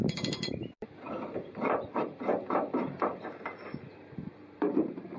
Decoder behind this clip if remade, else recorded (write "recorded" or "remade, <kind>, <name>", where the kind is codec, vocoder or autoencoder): remade, vocoder, BigVGAN v2